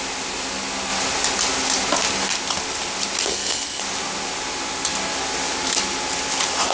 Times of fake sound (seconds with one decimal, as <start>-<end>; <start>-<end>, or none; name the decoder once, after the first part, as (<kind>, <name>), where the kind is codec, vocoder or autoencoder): 3.3-3.8 (codec, SNAC)